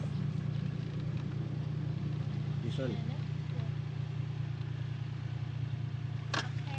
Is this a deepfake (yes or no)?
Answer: no